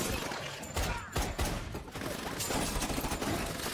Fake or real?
real